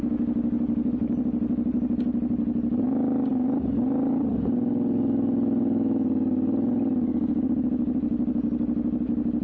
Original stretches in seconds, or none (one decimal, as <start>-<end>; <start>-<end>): 0.0-9.4